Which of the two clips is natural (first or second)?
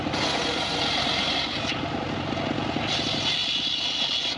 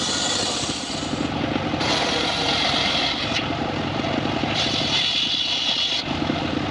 first